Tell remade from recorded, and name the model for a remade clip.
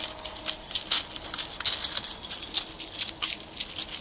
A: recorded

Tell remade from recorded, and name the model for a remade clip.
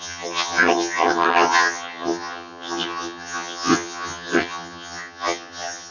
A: remade, vocoder, HiFi-GAN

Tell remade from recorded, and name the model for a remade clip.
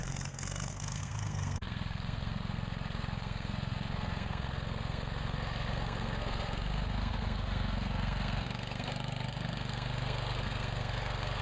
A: remade, codec, SNAC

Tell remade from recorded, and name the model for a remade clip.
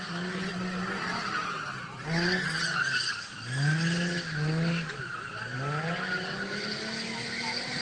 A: recorded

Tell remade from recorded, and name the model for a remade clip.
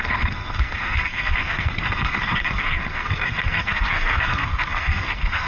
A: remade, codec, SNAC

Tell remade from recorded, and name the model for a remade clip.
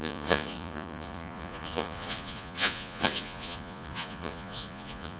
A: remade, vocoder, Vocos